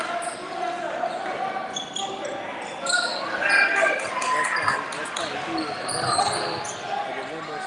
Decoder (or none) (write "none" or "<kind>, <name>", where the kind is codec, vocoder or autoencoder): none